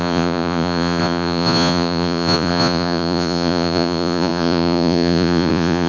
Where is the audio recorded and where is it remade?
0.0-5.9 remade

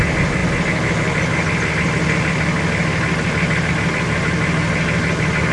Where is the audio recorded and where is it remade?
0.0-5.5 recorded

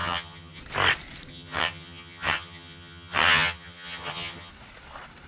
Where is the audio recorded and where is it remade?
0.0-0.6 remade; 0.6-1.3 recorded; 1.3-4.5 remade; 4.5-5.3 recorded

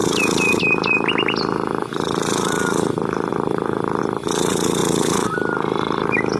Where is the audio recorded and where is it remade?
0.0-3.3 remade; 3.3-4.0 recorded; 4.0-4.8 remade; 4.8-6.4 recorded